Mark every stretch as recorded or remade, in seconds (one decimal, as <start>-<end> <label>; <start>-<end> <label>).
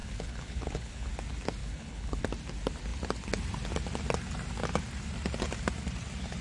0.0-1.1 remade; 1.1-1.6 recorded; 1.6-2.2 remade; 2.2-6.4 recorded